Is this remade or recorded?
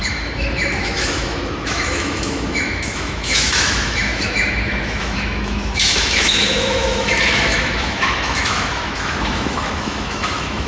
remade